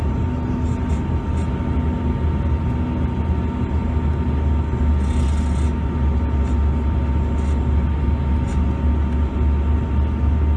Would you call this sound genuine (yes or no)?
yes